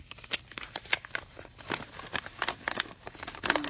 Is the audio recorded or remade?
recorded